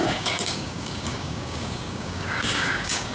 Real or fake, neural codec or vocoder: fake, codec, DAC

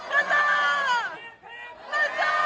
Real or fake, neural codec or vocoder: real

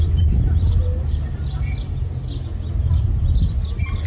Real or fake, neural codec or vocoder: real